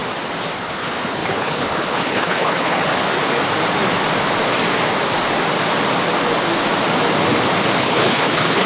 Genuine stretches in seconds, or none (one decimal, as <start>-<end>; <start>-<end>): 0.0-0.6; 2.9-7.8